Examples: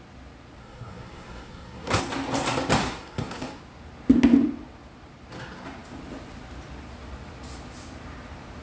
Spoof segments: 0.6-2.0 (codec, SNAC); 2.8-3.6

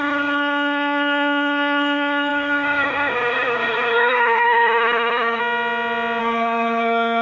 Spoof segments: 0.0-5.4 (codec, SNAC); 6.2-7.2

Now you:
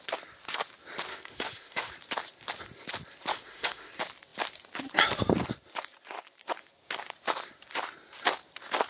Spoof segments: 1.1-1.9 (autoencoder, DAC-VAE); 3.3-3.9

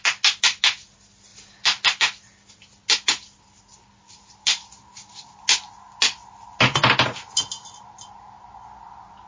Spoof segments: none